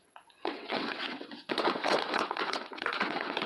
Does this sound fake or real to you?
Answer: fake